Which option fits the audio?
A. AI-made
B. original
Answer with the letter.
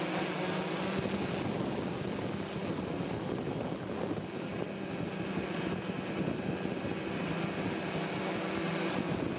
B